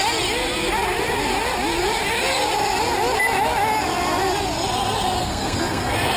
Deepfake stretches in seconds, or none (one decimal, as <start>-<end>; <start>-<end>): 5.2-6.2